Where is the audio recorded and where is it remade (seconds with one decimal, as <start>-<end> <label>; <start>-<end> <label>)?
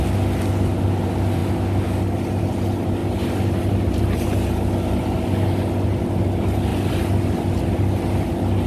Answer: 0.0-8.7 recorded